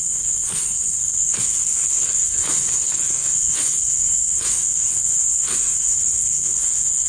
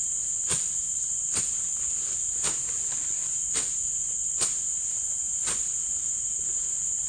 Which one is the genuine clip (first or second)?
second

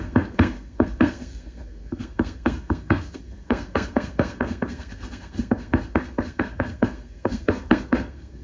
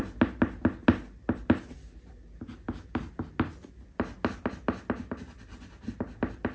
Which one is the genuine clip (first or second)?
second